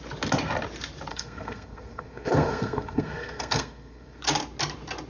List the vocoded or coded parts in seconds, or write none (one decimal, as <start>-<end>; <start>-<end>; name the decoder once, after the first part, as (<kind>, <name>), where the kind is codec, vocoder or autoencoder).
1.1-4.2 (codec, SNAC)